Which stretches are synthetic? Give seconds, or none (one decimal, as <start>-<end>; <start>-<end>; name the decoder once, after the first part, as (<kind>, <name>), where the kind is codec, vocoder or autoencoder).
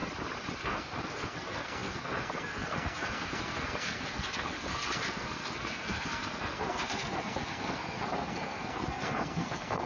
0.6-9.9 (codec, SNAC)